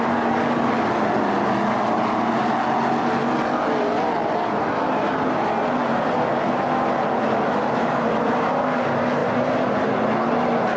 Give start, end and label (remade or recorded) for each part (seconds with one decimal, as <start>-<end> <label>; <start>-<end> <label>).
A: 0.0-10.8 recorded